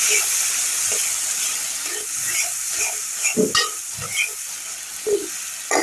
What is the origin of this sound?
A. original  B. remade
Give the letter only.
A